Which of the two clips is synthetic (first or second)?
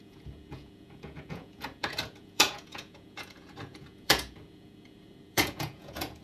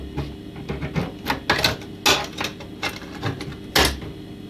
first